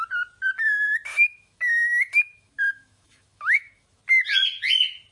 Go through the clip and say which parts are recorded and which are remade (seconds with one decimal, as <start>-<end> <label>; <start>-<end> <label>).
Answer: 0.0-1.1 recorded; 1.1-4.0 remade; 4.0-5.1 recorded